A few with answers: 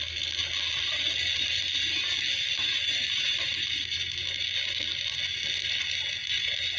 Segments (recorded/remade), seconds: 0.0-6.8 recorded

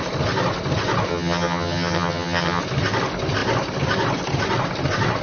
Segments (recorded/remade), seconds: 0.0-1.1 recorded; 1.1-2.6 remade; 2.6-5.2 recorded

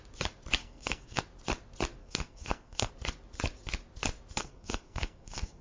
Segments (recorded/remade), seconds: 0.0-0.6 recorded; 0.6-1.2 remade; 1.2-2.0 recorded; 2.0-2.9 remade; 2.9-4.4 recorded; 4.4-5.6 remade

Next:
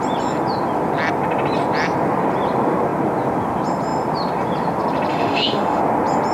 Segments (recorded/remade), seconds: 0.0-5.1 recorded; 5.1-5.8 remade; 5.8-6.3 recorded